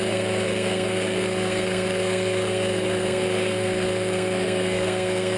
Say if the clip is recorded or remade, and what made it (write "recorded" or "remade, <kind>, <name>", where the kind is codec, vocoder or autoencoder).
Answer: remade, codec, SNAC